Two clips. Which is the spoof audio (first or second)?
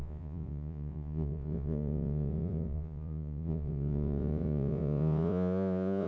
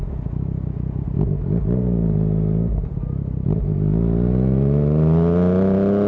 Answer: first